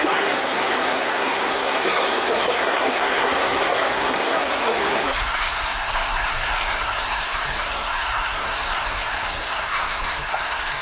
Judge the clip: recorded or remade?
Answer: remade